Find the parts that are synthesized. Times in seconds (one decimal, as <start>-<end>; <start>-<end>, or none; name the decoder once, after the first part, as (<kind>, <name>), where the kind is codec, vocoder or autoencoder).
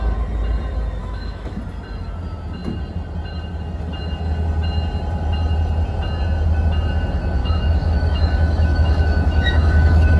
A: 1.0-1.6 (autoencoder, DAC-VAE); 7.4-10.2